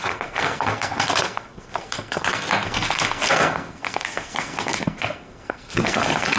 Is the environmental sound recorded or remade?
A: remade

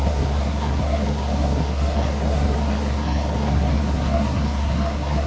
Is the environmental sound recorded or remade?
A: remade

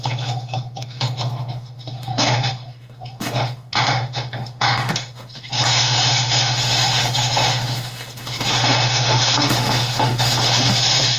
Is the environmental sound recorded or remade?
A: remade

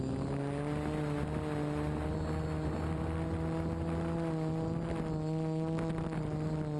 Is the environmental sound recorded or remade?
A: recorded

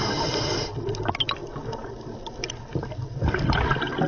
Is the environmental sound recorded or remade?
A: recorded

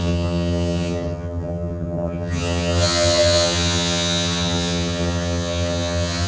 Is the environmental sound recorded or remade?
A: remade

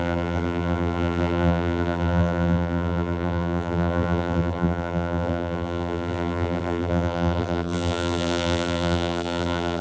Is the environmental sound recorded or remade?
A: remade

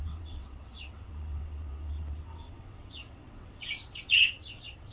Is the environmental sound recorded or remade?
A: remade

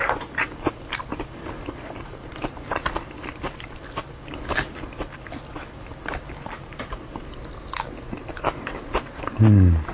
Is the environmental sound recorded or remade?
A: recorded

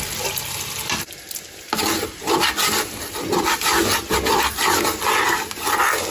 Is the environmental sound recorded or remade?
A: recorded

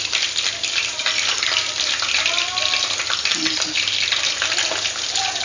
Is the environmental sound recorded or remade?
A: recorded